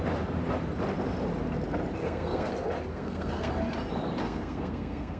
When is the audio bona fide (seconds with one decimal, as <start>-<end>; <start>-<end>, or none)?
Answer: 0.0-2.0; 2.5-2.9; 3.5-4.2